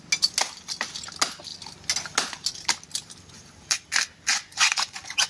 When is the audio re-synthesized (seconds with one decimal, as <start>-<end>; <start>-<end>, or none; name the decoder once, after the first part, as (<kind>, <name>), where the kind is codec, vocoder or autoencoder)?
4.3-5.3 (vocoder, Vocos)